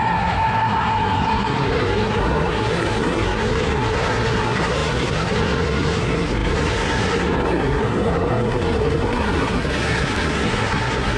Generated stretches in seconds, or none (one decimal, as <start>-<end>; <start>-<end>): 0.0-11.2

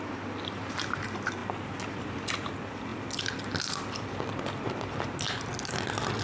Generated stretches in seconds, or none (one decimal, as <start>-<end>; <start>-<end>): none